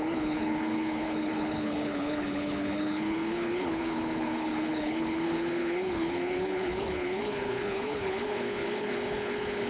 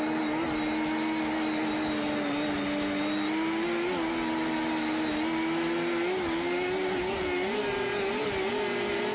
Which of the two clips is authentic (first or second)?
second